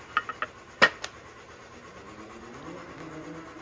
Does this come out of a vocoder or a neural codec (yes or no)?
no